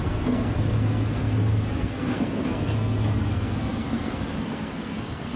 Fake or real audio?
fake